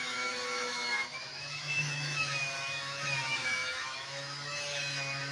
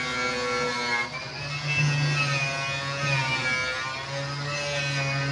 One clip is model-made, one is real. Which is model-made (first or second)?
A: first